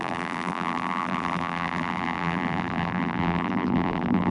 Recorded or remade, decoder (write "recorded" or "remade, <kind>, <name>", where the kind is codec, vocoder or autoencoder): remade, vocoder, BigVGAN v2